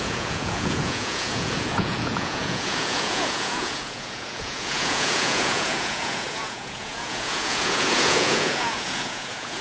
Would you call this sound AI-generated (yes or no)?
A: yes